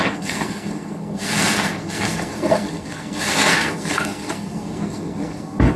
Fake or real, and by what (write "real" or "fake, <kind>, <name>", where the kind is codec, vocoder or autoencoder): fake, codec, SNAC